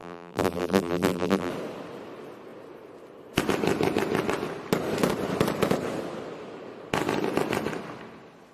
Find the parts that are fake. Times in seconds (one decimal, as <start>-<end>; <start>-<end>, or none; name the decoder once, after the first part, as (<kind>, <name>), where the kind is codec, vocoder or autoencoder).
0.0-1.5 (vocoder, BigVGAN v2)